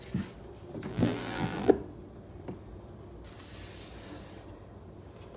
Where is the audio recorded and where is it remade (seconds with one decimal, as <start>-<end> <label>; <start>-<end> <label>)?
0.0-0.9 recorded; 0.9-1.7 remade; 1.7-5.4 recorded